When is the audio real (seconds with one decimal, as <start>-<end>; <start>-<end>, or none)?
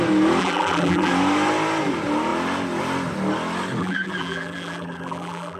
0.0-0.4; 1.1-3.8